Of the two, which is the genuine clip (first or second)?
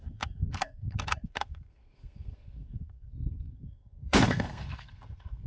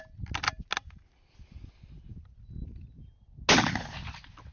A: second